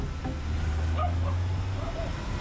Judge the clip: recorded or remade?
recorded